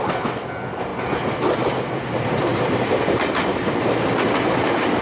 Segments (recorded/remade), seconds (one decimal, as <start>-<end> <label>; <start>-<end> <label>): 0.0-0.9 recorded; 0.9-1.9 remade; 1.9-5.0 recorded